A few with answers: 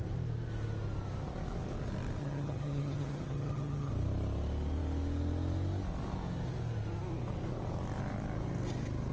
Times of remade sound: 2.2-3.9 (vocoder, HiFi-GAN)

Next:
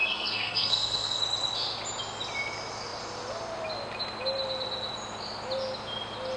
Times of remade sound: 0.0-1.2 (codec, SNAC)